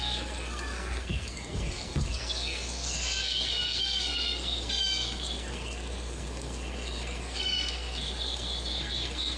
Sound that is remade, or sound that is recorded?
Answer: remade